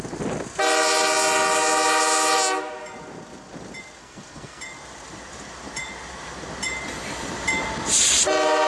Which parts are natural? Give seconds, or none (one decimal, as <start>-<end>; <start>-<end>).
0.0-4.0; 4.6-8.7